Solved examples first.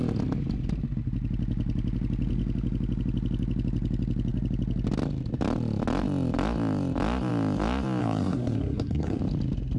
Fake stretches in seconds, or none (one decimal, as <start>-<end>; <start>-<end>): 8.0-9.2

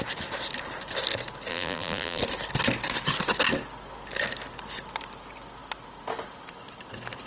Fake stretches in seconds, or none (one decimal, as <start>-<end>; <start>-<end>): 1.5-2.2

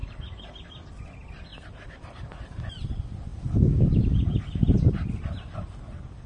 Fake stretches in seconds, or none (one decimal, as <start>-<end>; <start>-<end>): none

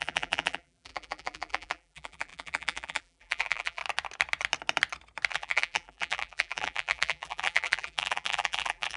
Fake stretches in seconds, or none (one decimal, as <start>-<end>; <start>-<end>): 0.0-3.8; 5.3-9.0